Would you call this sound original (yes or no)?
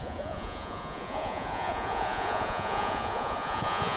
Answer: no